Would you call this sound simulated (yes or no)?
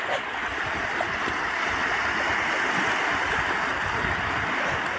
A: no